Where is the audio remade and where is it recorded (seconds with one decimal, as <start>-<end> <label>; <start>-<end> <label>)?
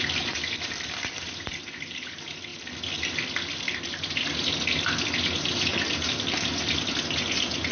0.0-7.7 recorded